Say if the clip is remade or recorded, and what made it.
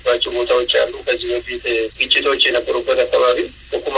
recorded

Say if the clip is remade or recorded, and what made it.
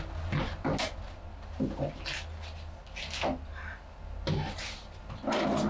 recorded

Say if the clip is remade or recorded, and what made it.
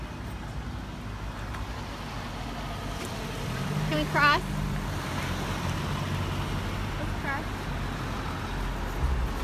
recorded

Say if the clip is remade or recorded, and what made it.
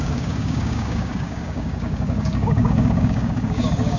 remade, codec, DAC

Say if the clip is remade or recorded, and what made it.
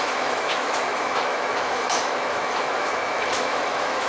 remade, autoencoder, DAC-VAE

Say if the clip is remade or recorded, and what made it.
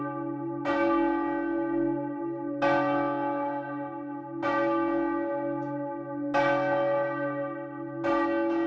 recorded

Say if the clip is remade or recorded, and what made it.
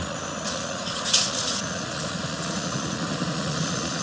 remade, vocoder, Vocos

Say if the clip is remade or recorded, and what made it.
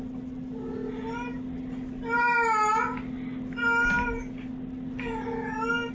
recorded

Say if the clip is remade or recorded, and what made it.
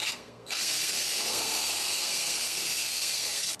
remade, codec, SNAC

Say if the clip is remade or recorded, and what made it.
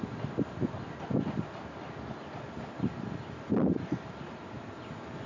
recorded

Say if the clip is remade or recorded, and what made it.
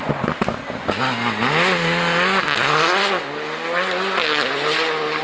recorded